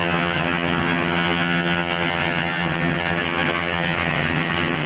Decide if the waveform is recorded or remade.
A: remade